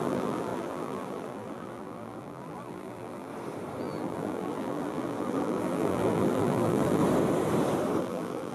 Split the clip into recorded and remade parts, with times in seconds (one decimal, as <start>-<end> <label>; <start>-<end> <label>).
0.0-3.3 remade; 3.3-3.8 recorded; 3.8-7.0 remade; 7.0-8.0 recorded; 8.0-8.5 remade